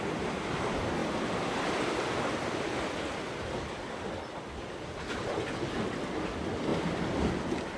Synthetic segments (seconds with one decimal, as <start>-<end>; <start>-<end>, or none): none